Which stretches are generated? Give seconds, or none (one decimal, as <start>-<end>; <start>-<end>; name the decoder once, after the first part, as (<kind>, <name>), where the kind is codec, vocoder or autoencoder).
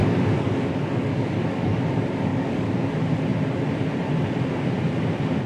0.0-1.8 (codec, DAC); 2.3-2.9